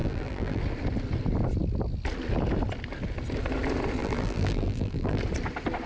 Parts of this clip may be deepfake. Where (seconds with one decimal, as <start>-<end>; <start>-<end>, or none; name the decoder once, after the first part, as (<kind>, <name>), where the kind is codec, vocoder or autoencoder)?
0.0-0.6 (vocoder, BigVGAN v2); 4.0-5.2